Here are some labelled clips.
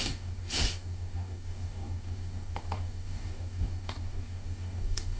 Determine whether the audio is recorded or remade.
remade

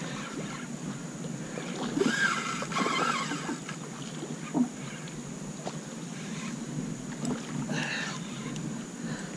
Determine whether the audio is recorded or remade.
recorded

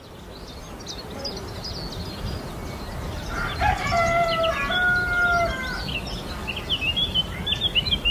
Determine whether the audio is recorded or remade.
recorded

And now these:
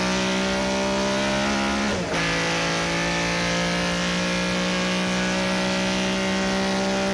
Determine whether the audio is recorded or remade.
recorded